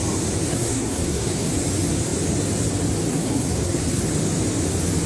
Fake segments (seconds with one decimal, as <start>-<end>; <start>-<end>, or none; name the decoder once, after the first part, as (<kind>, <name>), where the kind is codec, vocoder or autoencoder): 0.5-1.5 (codec, SNAC); 3.1-4.0